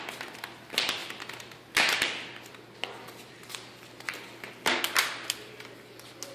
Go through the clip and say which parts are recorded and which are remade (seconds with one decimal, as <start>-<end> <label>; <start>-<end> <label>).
0.0-6.3 recorded

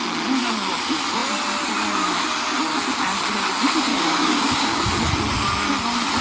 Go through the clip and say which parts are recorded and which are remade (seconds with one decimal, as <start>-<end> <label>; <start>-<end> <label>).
0.0-3.9 recorded; 3.9-4.9 remade; 4.9-6.2 recorded

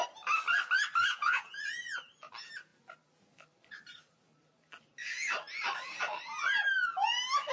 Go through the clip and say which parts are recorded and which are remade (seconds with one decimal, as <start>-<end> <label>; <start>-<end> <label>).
0.0-1.1 recorded; 1.1-2.0 remade; 2.0-7.5 recorded

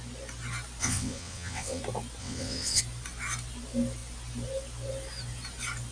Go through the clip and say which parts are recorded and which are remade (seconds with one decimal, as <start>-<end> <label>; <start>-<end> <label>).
0.0-0.8 recorded; 0.8-1.8 remade; 1.8-2.2 recorded; 2.2-2.8 remade; 2.8-5.9 recorded

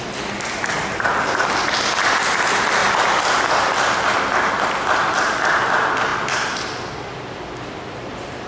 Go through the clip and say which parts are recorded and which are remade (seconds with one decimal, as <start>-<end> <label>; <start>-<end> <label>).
0.0-8.5 recorded